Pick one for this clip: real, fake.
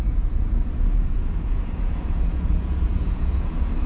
fake